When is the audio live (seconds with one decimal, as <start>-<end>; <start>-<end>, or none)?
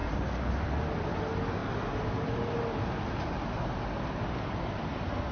0.0-5.3